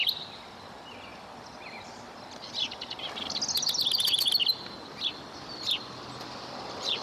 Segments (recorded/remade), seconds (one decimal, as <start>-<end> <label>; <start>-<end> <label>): 0.0-7.0 recorded